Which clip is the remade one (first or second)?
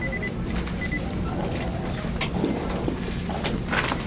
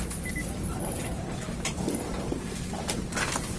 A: second